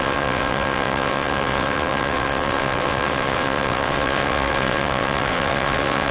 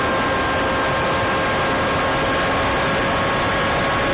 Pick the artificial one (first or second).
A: first